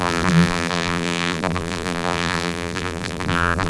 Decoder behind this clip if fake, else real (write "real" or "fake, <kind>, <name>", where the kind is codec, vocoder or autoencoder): fake, vocoder, BigVGAN v2